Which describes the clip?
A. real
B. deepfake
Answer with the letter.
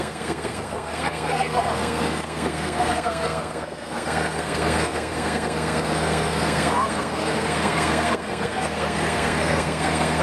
B